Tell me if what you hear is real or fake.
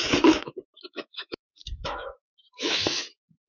fake